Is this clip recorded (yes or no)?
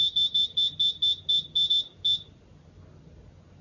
yes